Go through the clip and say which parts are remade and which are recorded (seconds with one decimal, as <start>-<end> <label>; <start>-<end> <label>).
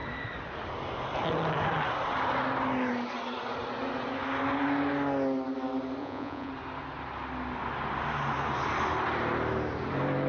0.0-6.0 recorded; 6.0-6.5 remade; 6.5-10.3 recorded